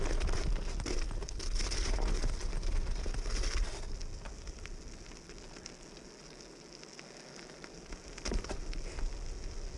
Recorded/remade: recorded